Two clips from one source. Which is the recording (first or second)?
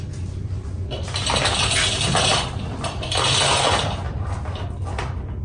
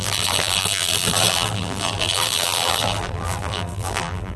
first